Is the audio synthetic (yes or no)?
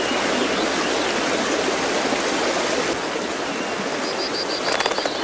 no